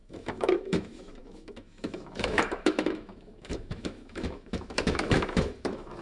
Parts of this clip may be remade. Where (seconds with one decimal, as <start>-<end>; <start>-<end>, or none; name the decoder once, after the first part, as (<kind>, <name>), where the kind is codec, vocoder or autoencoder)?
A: 0.0-6.0 (autoencoder, DAC-VAE)